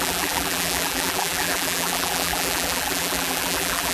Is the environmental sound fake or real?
fake